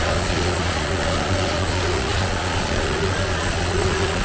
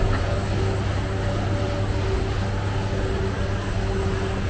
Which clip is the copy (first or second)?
first